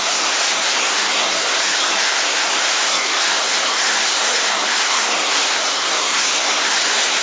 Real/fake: fake